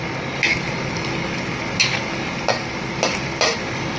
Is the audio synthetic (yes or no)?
no